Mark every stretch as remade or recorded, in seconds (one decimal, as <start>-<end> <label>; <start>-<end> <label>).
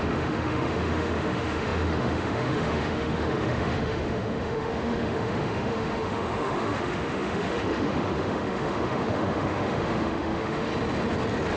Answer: 0.0-10.7 remade; 10.7-11.6 recorded